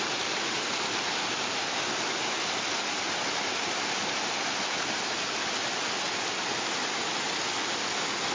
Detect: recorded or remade recorded